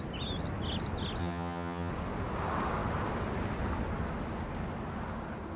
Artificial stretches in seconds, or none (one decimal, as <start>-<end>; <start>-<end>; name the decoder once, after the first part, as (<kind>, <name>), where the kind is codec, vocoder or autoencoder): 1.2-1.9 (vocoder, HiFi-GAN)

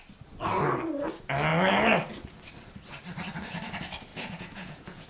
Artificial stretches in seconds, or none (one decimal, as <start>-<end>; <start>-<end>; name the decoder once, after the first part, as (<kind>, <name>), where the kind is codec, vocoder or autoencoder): 4.1-5.1 (vocoder, Vocos)

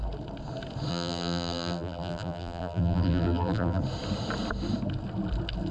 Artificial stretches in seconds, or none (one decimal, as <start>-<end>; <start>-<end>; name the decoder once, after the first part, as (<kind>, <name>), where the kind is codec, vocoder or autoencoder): 0.9-3.8 (vocoder, BigVGAN v2)